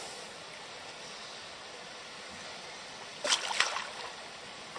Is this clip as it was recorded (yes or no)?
yes